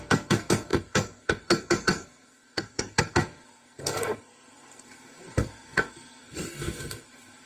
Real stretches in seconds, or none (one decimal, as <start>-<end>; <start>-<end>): none